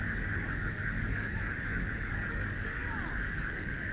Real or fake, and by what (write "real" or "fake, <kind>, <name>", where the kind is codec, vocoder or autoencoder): fake, codec, DAC